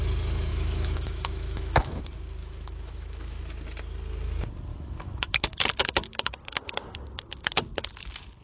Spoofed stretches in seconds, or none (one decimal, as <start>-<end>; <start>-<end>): 0.5-2.0; 2.4-3.4; 4.7-5.6

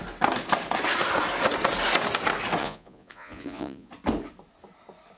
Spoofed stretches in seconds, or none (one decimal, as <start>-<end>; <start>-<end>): 2.6-3.9